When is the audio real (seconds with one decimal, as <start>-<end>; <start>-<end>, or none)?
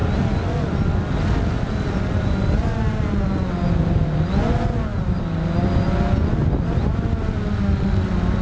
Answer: 0.0-8.4